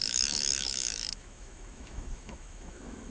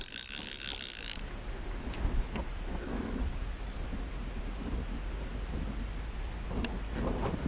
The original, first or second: second